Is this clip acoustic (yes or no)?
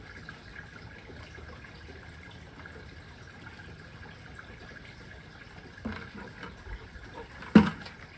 yes